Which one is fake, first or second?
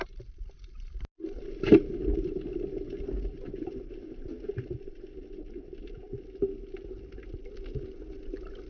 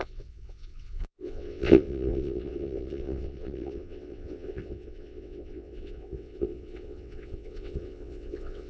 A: second